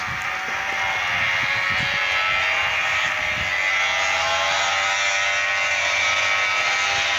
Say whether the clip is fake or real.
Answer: real